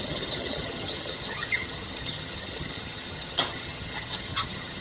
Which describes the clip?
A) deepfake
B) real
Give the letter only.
A